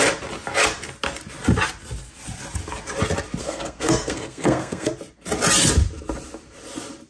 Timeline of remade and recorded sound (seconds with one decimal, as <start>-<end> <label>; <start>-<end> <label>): 0.0-3.4 recorded; 3.4-4.9 remade; 4.9-7.1 recorded